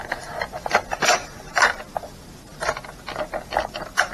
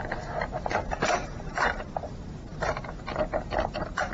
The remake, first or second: second